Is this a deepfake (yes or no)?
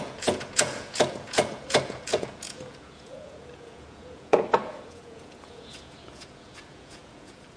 yes